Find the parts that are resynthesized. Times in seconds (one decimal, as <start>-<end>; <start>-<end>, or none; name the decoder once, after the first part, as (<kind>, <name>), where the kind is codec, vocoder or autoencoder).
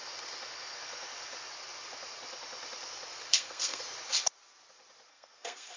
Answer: 3.3-3.8 (codec, SNAC); 5.1-5.8